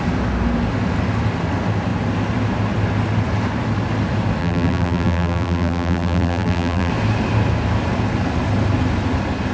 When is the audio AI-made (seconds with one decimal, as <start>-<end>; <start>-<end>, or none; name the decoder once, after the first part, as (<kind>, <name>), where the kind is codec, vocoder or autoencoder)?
4.4-6.9 (vocoder, BigVGAN v2)